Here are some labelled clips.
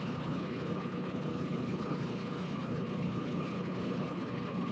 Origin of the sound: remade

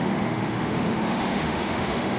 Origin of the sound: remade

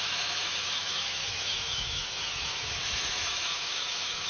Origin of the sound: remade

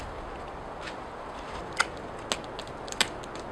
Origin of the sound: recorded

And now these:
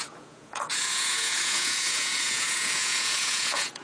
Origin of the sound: remade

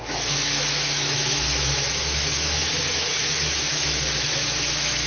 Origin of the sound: remade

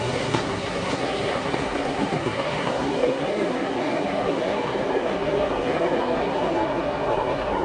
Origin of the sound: remade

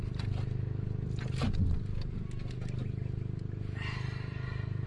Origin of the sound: recorded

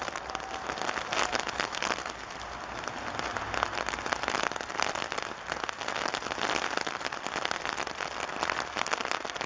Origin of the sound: recorded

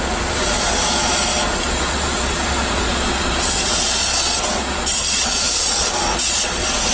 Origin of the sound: remade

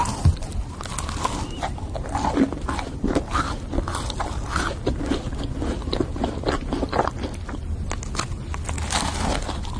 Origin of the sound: recorded